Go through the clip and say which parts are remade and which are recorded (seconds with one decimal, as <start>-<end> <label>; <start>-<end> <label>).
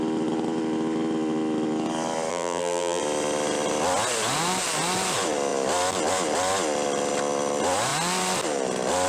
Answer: 0.0-2.3 recorded; 2.3-3.0 remade; 3.0-9.1 recorded